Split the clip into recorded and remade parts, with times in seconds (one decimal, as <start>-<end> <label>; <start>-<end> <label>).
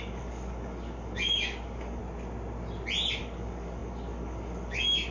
0.0-2.0 remade; 2.0-3.2 recorded; 3.2-5.1 remade